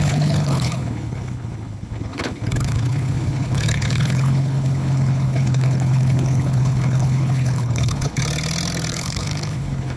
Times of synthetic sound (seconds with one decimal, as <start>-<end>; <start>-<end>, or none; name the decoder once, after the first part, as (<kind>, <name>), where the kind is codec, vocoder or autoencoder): 0.0-8.2 (codec, HILCodec); 8.9-10.0